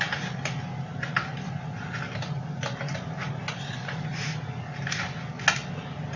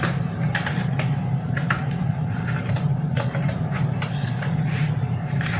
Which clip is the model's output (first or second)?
second